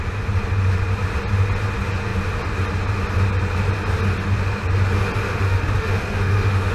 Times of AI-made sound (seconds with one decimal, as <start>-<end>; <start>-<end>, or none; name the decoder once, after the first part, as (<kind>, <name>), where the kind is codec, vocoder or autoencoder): 5.2-6.7 (autoencoder, DAC-VAE)